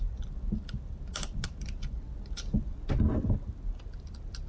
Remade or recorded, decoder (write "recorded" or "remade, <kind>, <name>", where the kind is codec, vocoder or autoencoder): recorded